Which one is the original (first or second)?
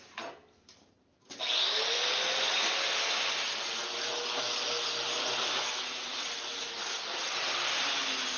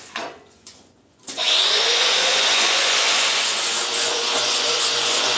first